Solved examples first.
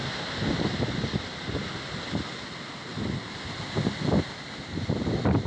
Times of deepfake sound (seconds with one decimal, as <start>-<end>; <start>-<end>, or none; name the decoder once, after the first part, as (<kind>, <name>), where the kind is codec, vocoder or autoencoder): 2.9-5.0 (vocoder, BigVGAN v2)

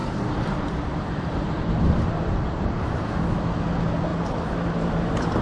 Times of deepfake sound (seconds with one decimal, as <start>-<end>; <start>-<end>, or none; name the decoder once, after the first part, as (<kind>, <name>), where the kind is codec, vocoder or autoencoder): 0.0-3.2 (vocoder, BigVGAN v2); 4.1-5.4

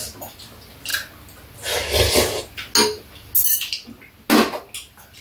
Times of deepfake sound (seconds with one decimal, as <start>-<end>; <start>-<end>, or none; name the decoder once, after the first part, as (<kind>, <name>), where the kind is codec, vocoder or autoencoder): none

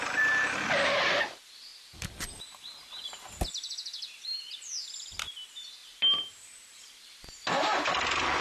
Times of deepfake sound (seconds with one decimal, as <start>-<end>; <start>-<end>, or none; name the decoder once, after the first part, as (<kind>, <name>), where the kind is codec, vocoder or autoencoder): 1.7-3.0 (vocoder, BigVGAN v2); 5.8-7.0

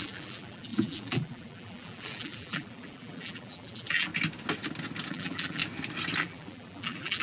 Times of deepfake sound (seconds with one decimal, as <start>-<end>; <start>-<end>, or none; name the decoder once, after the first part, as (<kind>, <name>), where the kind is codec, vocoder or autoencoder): 0.0-4.1 (vocoder, BigVGAN v2); 5.1-5.6; 6.2-7.2

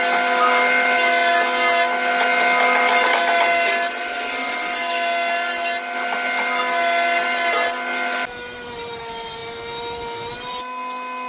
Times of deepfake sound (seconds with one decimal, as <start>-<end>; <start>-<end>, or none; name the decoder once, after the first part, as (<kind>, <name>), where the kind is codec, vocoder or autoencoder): none

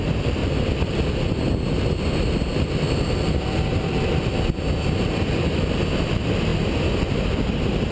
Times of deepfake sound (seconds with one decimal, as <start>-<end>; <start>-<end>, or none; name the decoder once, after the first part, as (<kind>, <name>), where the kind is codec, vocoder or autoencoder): 0.4-1.1 (vocoder, BigVGAN v2); 2.5-5.8

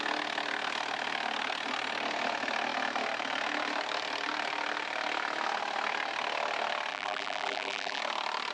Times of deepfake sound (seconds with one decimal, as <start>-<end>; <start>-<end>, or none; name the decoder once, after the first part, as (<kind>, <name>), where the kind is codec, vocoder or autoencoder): 6.9-8.0 (vocoder, BigVGAN v2)